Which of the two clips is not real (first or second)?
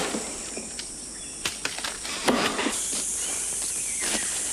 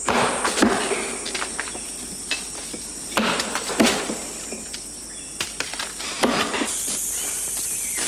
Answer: first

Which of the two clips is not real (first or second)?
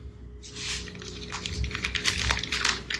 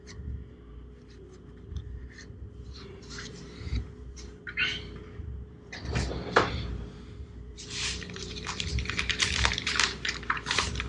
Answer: second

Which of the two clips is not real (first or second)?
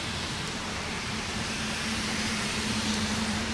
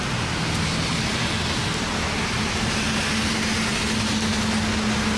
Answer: first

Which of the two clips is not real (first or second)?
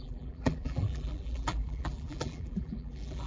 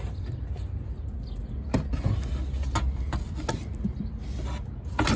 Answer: first